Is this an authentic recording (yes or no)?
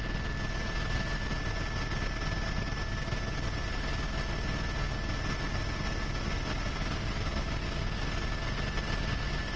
yes